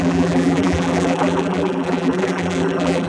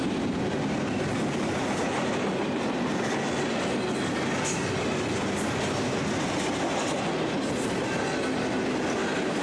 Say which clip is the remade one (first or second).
first